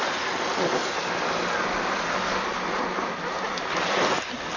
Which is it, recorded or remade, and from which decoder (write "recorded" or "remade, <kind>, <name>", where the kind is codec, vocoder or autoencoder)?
recorded